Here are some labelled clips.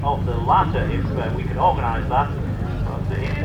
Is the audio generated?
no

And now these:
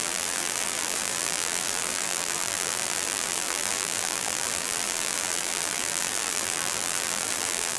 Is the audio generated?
yes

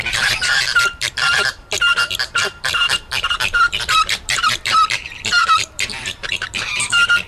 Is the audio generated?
yes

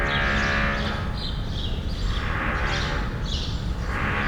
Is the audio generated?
no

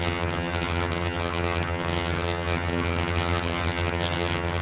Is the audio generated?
yes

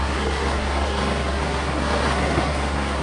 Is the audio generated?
yes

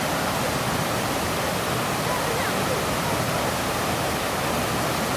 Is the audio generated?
no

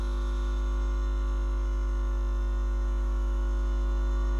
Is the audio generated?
yes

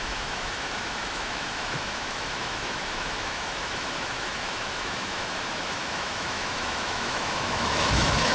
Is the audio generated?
yes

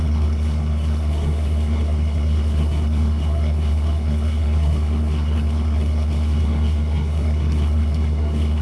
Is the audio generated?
yes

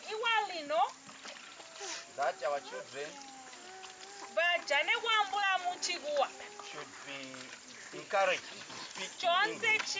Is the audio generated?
no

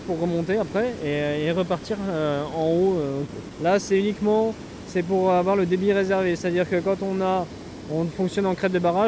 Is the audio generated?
no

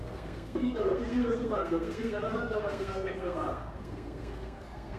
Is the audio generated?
yes